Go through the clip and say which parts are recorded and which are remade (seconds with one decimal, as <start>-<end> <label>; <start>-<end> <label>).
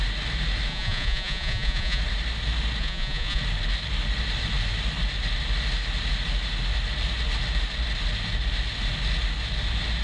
0.0-0.7 recorded; 0.7-2.0 remade; 2.0-2.8 recorded; 2.8-3.4 remade; 3.4-10.0 recorded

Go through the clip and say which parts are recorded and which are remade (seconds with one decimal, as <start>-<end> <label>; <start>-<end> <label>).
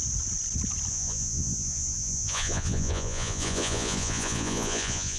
0.0-0.9 recorded; 0.9-5.2 remade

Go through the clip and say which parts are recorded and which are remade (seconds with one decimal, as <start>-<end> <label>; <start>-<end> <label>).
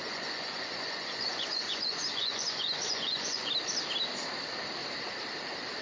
0.0-3.5 remade; 3.5-5.8 recorded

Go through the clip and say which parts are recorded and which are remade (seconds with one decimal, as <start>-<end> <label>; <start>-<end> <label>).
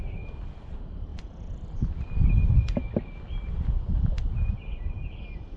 0.0-5.6 recorded